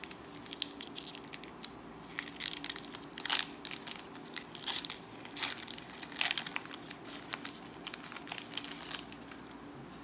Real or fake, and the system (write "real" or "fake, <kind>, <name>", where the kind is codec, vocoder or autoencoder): real